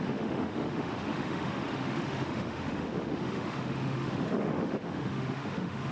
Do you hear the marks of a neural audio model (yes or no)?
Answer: yes